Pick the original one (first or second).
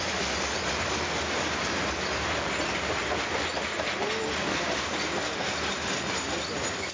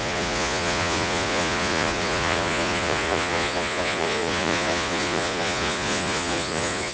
first